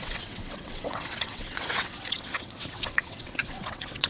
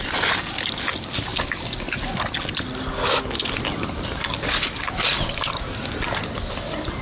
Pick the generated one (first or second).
first